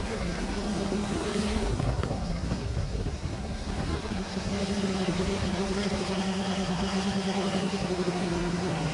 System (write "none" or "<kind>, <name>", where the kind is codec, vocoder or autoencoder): codec, SNAC